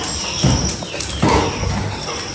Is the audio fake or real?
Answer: real